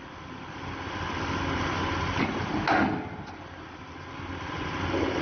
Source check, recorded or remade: recorded